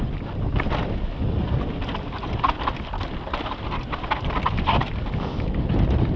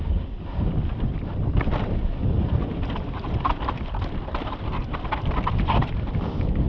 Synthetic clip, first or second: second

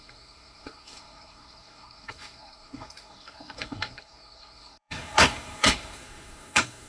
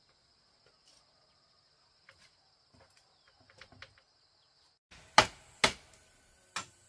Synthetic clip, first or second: first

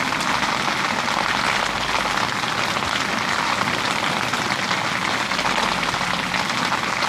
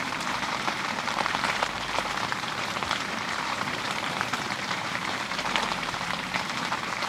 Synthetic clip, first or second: second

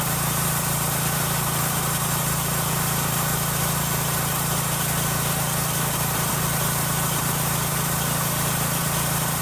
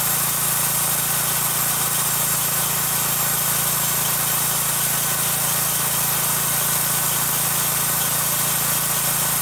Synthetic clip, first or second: first